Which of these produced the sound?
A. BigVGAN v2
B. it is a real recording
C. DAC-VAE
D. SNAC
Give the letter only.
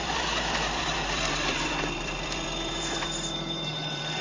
A